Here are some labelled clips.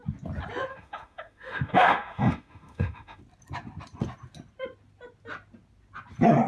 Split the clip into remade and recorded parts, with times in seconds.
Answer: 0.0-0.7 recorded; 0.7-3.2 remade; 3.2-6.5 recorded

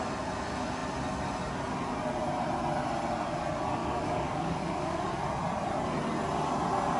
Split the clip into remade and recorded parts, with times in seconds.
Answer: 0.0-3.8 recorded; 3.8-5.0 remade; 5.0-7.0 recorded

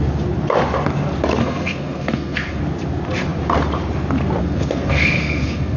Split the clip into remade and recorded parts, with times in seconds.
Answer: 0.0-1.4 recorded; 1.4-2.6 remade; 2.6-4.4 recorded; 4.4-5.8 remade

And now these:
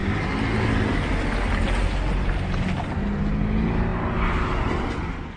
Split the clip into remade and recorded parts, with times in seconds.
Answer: 0.0-5.4 recorded

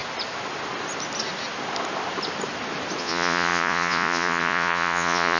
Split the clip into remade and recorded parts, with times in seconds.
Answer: 0.0-3.0 recorded; 3.0-5.4 remade